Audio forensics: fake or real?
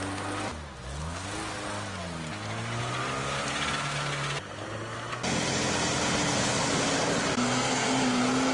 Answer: real